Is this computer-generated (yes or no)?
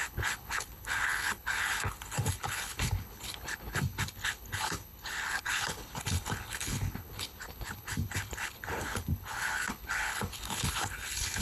yes